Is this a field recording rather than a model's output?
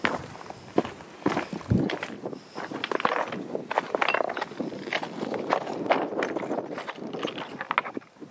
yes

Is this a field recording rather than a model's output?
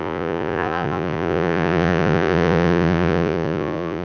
no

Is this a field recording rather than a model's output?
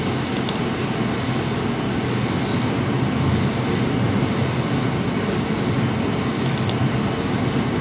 yes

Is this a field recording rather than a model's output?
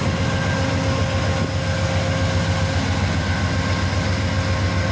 yes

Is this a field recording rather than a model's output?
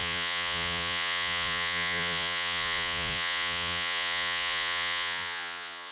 no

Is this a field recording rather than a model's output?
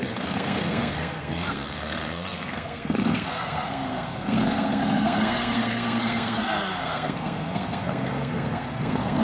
no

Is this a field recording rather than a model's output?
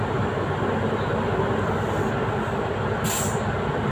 yes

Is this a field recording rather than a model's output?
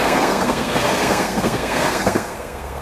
no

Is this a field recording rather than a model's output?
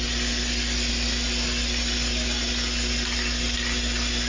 yes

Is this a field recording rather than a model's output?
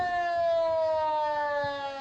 yes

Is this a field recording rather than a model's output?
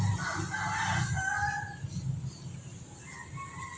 yes